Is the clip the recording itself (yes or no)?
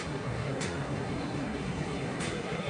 no